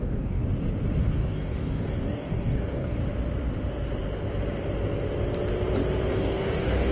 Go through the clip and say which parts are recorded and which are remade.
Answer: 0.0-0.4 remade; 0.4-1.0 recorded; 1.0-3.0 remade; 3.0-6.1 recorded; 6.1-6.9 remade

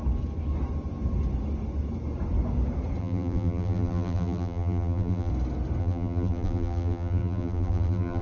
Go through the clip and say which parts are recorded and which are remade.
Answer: 0.0-3.0 recorded; 3.0-5.3 remade; 5.3-5.8 recorded; 5.8-8.2 remade

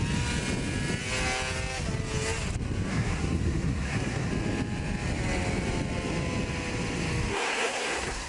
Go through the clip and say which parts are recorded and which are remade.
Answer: 0.0-2.9 recorded; 2.9-4.3 remade; 4.3-7.3 recorded; 7.3-8.3 remade

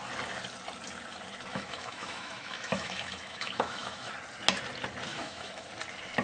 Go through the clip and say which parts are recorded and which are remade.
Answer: 0.0-1.5 recorded; 1.5-4.1 remade; 4.1-5.1 recorded; 5.1-5.7 remade; 5.7-6.2 recorded

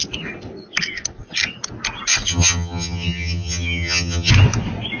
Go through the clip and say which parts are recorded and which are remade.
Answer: 0.0-2.3 recorded; 2.3-4.3 remade; 4.3-5.0 recorded

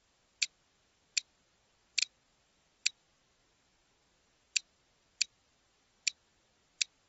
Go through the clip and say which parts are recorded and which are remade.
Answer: 0.0-7.1 recorded

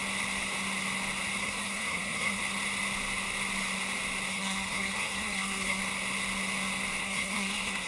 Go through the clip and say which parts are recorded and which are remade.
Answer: 0.0-1.4 recorded; 1.4-2.4 remade; 2.4-4.3 recorded; 4.3-5.8 remade; 5.8-7.0 recorded; 7.0-7.9 remade